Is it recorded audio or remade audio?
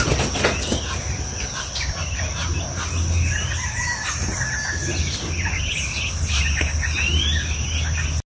recorded